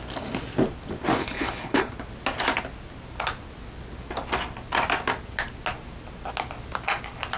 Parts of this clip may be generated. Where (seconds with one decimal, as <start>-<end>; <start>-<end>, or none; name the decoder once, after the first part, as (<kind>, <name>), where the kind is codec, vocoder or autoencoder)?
1.2-1.9 (codec, HILCodec)